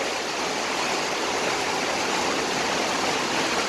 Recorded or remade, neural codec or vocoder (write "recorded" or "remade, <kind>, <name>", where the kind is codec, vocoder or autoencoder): recorded